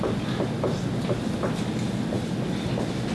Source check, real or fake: real